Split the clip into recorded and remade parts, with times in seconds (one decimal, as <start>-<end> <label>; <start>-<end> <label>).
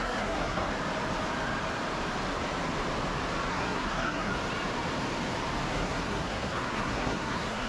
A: 0.0-0.7 remade; 0.7-3.5 recorded; 3.5-4.3 remade; 4.3-5.7 recorded; 5.7-7.7 remade